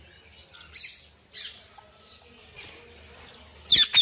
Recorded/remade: recorded